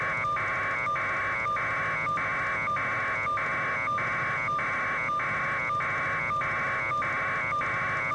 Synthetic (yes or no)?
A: no